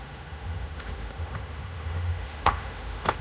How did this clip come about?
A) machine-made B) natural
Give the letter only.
A